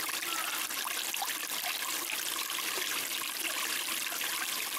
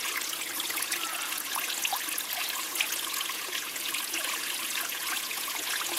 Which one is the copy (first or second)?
second